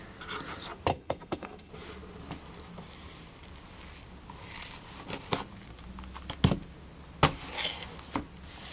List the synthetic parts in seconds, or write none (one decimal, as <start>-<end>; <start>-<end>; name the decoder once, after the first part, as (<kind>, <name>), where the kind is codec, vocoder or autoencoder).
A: 0.9-1.7 (codec, SNAC)